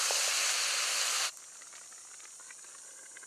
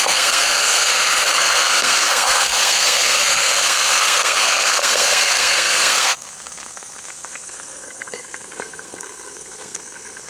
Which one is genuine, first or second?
first